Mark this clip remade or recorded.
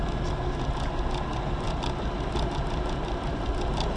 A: recorded